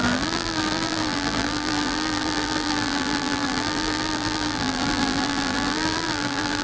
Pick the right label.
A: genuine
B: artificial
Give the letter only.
B